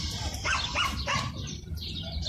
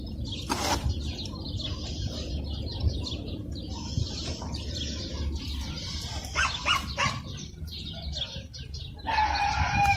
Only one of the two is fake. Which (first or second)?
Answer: first